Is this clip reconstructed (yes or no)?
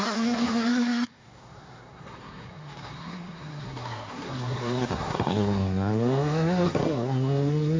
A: yes